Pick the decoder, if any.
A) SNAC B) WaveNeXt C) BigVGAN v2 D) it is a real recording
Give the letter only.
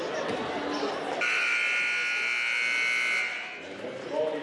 D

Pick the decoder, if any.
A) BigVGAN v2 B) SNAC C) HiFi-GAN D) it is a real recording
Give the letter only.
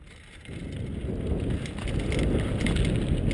D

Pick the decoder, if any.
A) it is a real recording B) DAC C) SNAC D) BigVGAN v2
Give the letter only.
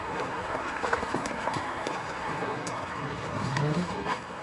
C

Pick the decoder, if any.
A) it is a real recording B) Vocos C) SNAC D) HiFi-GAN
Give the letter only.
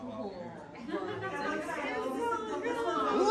A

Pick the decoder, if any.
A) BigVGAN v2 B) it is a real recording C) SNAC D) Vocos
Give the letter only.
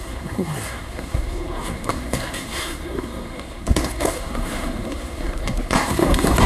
C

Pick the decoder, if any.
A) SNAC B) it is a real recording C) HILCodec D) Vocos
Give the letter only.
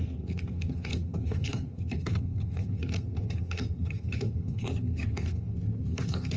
A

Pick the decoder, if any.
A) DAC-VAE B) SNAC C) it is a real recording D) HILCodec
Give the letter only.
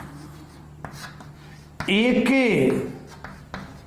C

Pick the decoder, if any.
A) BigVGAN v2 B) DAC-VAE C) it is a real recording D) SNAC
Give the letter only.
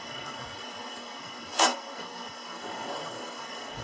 D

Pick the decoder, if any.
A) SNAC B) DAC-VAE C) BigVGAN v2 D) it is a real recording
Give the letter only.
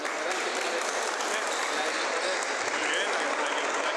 D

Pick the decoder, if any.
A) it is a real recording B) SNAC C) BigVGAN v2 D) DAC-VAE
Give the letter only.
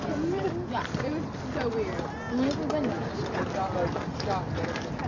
A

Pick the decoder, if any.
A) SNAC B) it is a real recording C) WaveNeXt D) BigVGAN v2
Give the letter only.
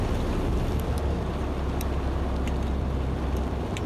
B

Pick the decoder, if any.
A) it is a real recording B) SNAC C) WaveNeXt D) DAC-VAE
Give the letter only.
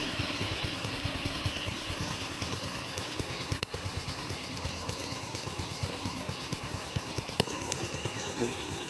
B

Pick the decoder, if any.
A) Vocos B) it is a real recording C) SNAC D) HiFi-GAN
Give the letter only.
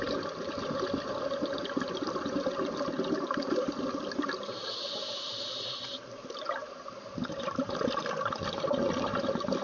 B